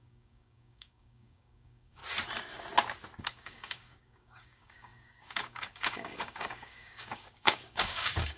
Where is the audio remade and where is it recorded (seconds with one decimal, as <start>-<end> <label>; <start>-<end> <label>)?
0.0-2.0 remade; 2.0-3.2 recorded; 3.2-8.4 remade